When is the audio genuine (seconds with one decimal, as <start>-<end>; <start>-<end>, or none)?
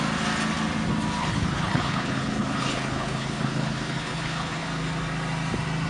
0.0-1.2; 4.7-5.9